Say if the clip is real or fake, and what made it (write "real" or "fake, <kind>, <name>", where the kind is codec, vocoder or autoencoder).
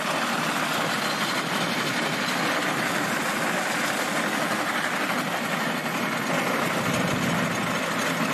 real